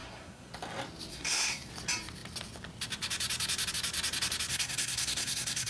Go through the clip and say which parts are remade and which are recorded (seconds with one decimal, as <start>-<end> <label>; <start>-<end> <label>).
0.0-0.5 remade; 0.5-1.1 recorded; 1.1-1.7 remade; 1.7-4.5 recorded; 4.5-5.7 remade